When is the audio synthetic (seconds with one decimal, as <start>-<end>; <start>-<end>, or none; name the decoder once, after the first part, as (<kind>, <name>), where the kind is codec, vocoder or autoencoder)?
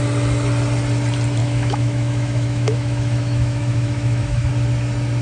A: 1.4-4.5 (autoencoder, DAC-VAE)